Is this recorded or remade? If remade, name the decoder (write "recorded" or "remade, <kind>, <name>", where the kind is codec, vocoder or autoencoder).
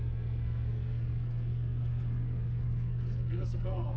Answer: remade, codec, SNAC